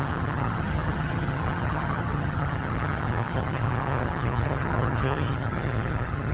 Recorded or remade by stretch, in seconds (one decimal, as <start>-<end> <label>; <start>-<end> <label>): 0.0-6.3 remade

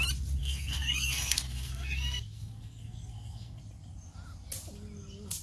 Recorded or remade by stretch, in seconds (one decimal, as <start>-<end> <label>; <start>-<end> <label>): 0.0-0.4 recorded; 0.4-3.6 remade; 3.6-5.4 recorded

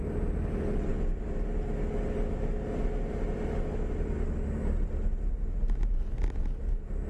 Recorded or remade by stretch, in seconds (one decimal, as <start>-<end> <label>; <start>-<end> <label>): 0.0-7.1 recorded

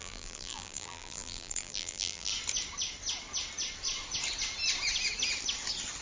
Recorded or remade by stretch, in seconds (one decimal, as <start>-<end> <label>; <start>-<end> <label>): 0.0-2.3 remade; 2.3-6.0 recorded

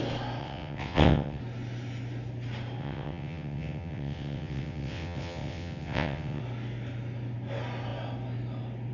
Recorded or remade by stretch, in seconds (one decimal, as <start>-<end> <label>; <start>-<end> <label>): 0.0-0.4 recorded; 0.4-1.4 remade; 1.4-2.8 recorded; 2.8-6.4 remade; 6.4-8.9 recorded

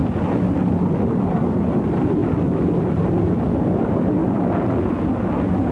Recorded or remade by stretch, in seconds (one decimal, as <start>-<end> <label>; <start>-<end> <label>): 0.0-0.7 recorded; 0.7-2.2 remade; 2.2-3.7 recorded; 3.7-4.2 remade; 4.2-5.7 recorded

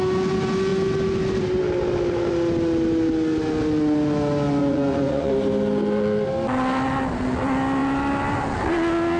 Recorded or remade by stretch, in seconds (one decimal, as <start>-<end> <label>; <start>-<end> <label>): 0.0-4.6 recorded; 4.6-5.3 remade; 5.3-9.2 recorded

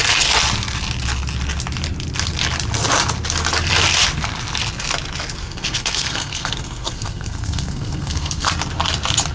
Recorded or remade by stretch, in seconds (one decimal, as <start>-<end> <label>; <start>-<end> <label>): 0.0-5.4 recorded; 5.4-8.5 remade; 8.5-9.3 recorded